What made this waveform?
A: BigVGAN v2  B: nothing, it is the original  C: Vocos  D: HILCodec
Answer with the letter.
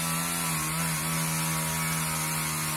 B